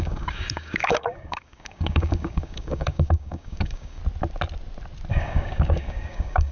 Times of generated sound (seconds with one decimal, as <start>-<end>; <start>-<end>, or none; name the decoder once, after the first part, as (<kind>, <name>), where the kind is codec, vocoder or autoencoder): 0.0-4.0 (codec, DAC); 5.1-6.5